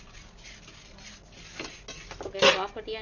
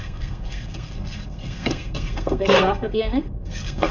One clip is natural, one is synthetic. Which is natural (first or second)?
first